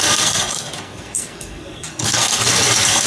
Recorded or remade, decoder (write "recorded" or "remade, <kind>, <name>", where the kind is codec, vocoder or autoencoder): remade, codec, SNAC